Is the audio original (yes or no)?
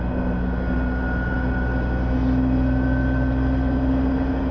yes